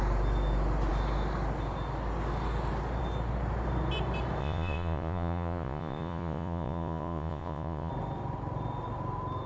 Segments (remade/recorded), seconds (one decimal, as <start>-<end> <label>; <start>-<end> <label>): 0.0-4.4 recorded; 4.4-7.9 remade; 7.9-9.5 recorded